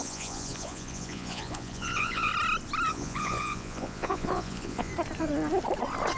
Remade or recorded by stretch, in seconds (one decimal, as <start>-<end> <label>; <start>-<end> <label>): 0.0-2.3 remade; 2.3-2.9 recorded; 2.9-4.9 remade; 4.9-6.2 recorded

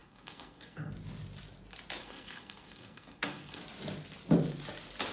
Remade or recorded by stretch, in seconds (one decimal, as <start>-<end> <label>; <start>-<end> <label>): 0.0-0.9 remade; 0.9-2.0 recorded; 2.0-3.6 remade; 3.6-5.1 recorded

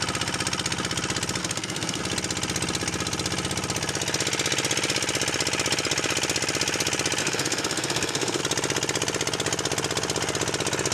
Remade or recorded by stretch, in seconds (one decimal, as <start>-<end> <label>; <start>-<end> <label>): 0.0-1.4 recorded; 1.4-2.0 remade; 2.0-7.2 recorded; 7.2-8.4 remade; 8.4-10.9 recorded